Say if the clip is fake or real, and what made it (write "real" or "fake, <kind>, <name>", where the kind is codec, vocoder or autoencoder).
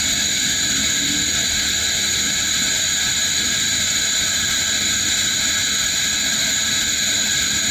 real